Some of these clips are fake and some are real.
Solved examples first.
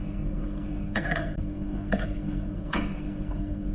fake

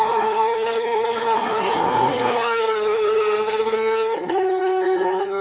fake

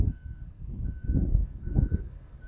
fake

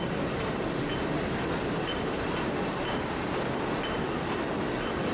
real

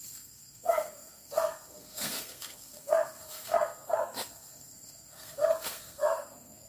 fake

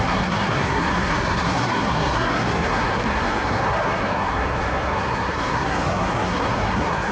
fake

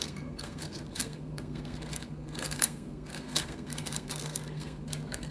fake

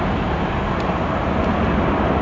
real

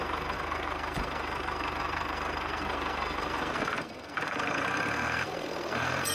fake